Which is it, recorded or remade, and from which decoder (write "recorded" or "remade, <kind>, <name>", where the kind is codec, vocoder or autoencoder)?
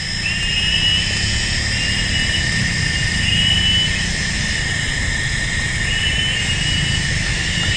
recorded